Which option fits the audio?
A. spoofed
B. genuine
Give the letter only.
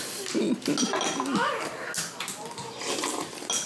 B